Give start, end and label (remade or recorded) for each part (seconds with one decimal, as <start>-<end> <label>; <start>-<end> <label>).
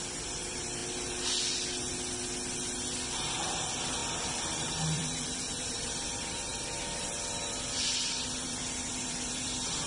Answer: 0.0-0.8 remade; 0.8-3.6 recorded; 3.6-9.9 remade